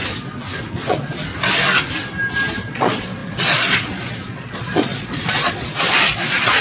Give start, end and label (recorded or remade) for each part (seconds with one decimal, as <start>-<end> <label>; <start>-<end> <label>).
0.0-0.6 recorded; 0.6-1.3 remade; 1.3-2.6 recorded; 2.6-6.6 remade